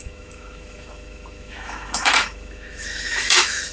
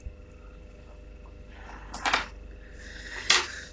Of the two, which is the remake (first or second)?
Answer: first